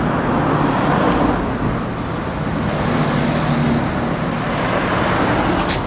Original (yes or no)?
yes